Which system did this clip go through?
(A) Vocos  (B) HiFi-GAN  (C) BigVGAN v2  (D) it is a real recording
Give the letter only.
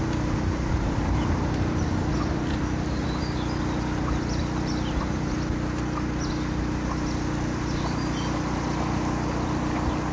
D